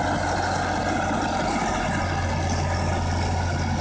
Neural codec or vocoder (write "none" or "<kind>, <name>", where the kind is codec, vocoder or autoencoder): none